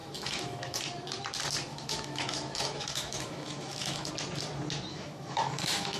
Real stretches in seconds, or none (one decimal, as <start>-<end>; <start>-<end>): 0.8-1.7; 4.1-4.9